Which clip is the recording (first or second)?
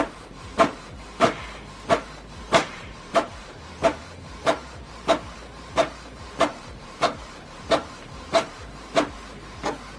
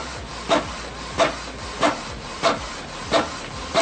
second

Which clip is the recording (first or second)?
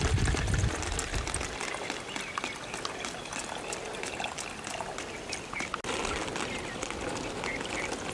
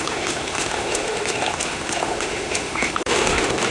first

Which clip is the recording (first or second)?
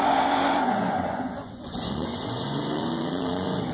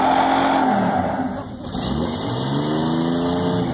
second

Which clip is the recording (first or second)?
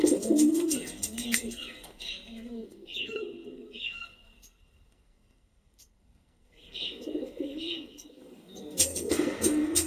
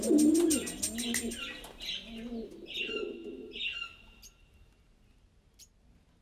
second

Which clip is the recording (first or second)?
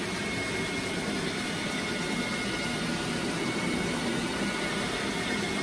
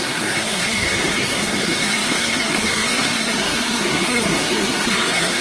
first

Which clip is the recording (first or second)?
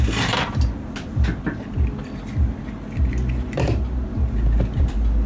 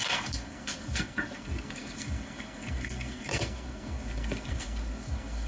first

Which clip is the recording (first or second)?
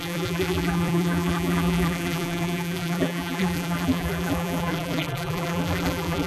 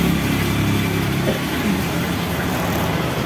second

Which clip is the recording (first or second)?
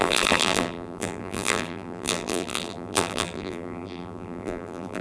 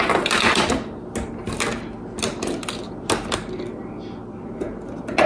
second